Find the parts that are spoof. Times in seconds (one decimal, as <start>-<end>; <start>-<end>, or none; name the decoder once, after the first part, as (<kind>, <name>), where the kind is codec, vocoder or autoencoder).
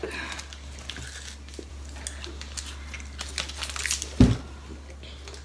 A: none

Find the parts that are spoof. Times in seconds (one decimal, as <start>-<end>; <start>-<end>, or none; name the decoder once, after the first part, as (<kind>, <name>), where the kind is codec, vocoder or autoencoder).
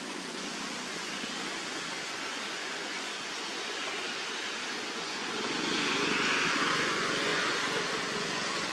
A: 0.0-4.2 (vocoder, Vocos); 4.7-8.7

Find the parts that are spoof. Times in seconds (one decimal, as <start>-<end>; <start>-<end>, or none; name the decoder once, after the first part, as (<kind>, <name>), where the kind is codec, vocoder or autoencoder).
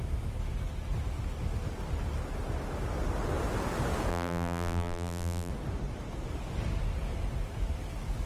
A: 4.1-5.5 (vocoder, BigVGAN v2)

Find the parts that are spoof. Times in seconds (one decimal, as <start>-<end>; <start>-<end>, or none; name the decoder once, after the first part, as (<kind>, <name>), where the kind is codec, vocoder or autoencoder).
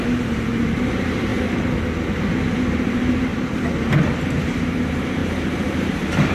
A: 0.0-1.3 (vocoder, BigVGAN v2); 2.7-3.3; 4.1-6.3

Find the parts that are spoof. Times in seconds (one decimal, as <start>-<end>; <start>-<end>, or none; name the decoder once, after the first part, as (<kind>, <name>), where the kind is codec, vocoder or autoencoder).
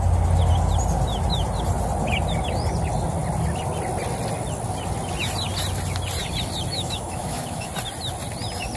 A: 6.7-7.7 (autoencoder, DAC-VAE)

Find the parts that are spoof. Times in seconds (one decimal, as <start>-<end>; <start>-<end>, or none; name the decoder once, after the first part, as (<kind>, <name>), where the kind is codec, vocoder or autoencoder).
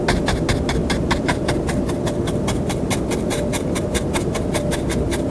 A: 0.8-1.9 (vocoder, BigVGAN v2); 3.5-4.6